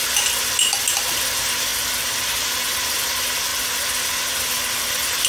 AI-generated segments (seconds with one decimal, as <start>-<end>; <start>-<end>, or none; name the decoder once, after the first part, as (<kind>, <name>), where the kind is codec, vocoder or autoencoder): none